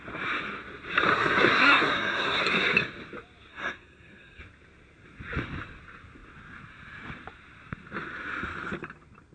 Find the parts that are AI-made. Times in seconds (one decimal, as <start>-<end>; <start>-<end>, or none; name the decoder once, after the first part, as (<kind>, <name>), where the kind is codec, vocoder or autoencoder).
1.1-2.4 (codec, SNAC); 3.5-4.4